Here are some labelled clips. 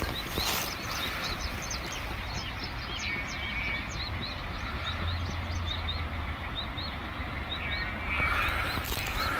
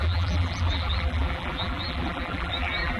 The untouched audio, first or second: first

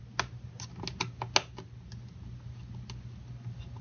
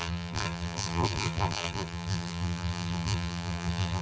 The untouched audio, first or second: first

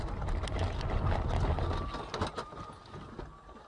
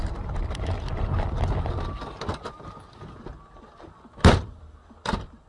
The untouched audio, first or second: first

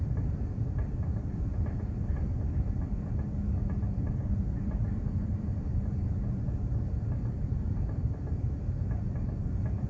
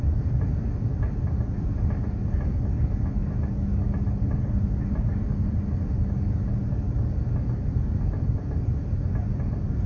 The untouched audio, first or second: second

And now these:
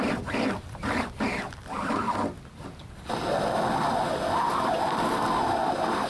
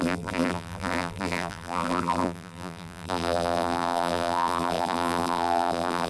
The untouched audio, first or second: first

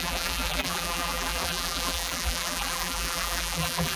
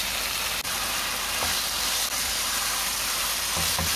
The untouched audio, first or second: second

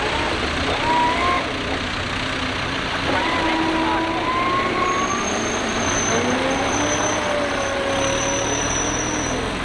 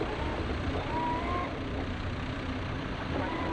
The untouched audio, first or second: first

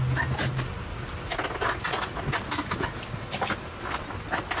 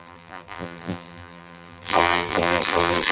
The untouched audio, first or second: first